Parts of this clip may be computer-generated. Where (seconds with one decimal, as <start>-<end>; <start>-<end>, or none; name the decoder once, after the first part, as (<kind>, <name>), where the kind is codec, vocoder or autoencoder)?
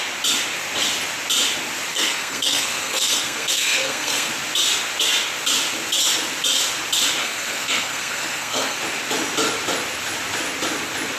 1.9-4.3 (codec, SNAC); 7.2-8.8